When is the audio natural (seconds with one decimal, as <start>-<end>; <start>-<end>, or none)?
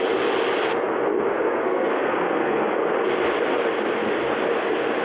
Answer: 0.0-1.3; 2.7-5.0